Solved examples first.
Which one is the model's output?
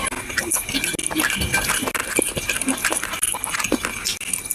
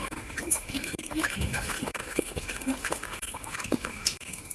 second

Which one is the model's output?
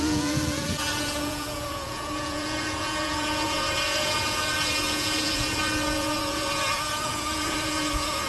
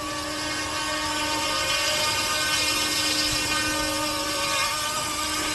first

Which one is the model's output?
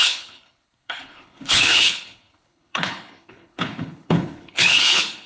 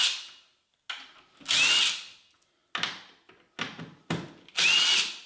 first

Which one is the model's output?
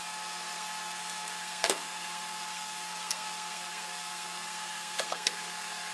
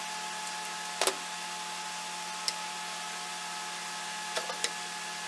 first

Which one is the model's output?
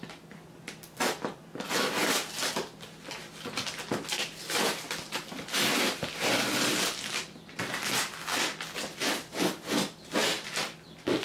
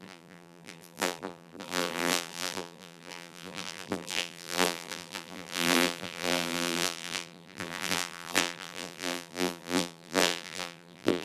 second